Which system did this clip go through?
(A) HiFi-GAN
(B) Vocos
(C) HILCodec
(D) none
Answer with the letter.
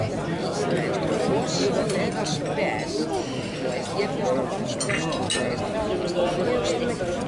D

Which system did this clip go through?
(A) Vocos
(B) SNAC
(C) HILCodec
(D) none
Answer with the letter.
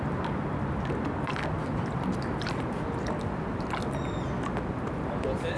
D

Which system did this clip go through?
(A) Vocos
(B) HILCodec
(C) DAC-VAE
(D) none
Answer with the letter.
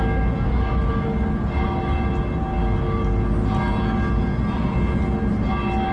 D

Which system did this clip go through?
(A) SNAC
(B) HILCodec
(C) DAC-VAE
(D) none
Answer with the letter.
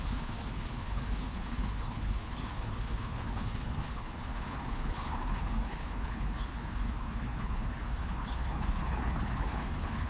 B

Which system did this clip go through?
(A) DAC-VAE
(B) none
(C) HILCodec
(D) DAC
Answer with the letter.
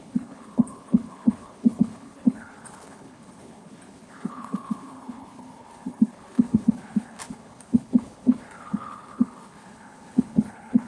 C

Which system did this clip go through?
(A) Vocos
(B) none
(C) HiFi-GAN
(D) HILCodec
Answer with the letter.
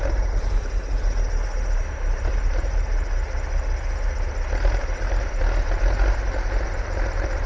B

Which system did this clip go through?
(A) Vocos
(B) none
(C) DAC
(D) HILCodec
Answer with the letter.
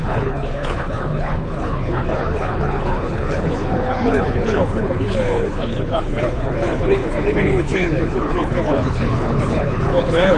D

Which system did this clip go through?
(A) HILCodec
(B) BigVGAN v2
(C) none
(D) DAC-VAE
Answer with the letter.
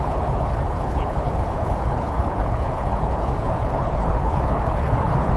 A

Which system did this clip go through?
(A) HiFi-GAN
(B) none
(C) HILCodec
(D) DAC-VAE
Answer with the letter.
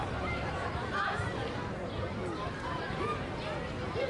B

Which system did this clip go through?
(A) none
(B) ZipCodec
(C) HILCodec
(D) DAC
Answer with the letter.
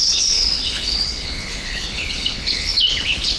C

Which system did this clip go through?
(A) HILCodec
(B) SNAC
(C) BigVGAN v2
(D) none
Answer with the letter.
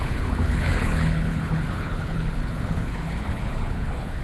A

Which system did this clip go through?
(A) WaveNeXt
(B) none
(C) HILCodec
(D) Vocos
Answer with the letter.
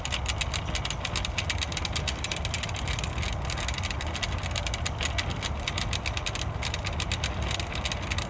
B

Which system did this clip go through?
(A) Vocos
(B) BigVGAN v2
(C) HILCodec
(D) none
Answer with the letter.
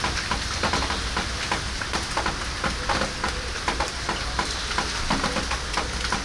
D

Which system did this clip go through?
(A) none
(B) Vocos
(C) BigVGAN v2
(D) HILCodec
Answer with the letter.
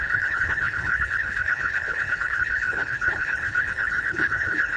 D